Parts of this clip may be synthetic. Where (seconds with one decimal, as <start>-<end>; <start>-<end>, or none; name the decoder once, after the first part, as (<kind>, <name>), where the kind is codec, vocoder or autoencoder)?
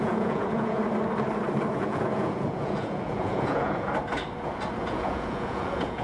0.0-0.8 (vocoder, Vocos); 1.8-3.9; 4.8-6.0